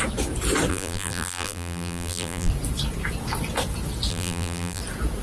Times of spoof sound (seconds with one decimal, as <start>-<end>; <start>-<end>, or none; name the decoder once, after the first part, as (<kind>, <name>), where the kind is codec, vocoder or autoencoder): 0.7-2.5 (vocoder, BigVGAN v2); 4.1-4.8